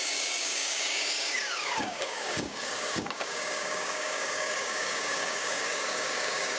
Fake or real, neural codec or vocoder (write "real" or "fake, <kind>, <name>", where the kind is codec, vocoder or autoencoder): fake, codec, DAC